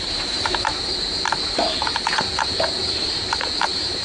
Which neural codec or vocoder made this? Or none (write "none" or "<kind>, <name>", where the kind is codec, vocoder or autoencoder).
vocoder, BigVGAN v2